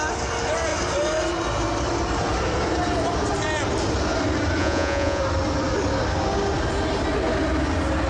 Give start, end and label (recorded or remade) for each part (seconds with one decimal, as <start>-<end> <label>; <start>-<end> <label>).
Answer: 0.0-4.6 recorded; 4.6-5.2 remade; 5.2-8.1 recorded